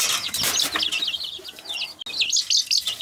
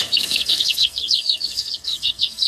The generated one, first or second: second